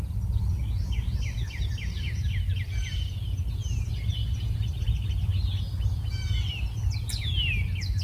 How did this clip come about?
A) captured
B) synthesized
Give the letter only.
A